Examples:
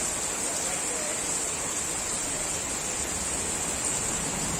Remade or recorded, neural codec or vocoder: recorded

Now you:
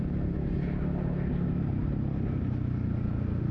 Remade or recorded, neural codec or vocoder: recorded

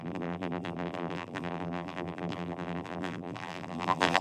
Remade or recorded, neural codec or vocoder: remade, vocoder, BigVGAN v2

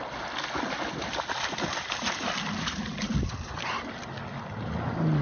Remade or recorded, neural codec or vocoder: recorded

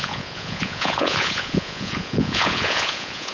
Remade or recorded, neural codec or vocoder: remade, vocoder, Vocos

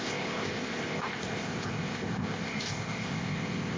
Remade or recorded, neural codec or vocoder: remade, codec, ZipCodec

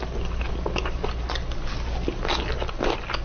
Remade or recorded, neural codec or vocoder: recorded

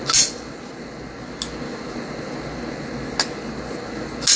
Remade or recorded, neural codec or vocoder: recorded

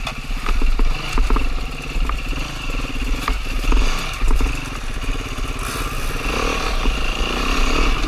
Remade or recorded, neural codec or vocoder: recorded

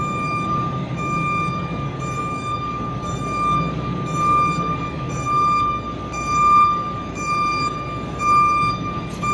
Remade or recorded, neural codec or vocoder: remade, codec, DAC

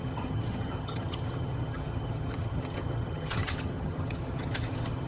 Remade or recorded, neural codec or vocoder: remade, vocoder, HiFi-GAN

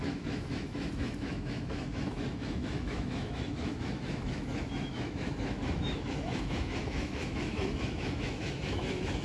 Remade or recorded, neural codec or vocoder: remade, autoencoder, DAC-VAE